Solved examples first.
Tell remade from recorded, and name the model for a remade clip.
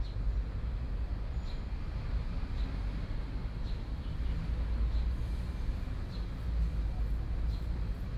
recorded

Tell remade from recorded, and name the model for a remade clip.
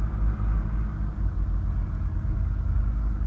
recorded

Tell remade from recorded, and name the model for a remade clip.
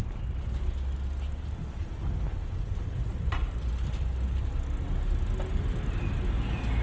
recorded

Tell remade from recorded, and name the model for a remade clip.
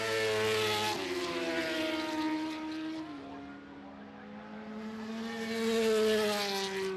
recorded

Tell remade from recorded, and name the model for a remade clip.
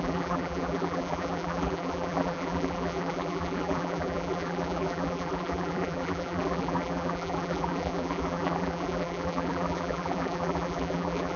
remade, vocoder, BigVGAN v2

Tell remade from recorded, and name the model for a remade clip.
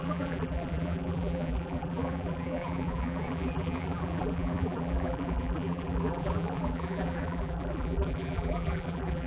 remade, vocoder, BigVGAN v2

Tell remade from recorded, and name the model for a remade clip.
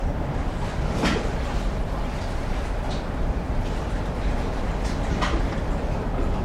recorded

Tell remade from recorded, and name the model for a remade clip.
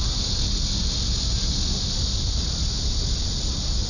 recorded